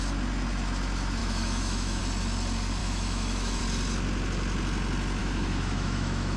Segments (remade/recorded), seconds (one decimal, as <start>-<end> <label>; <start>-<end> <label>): 0.0-1.2 recorded; 1.2-2.0 remade; 2.0-2.8 recorded; 2.8-3.6 remade; 3.6-5.2 recorded; 5.2-6.4 remade